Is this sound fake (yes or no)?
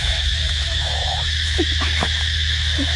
yes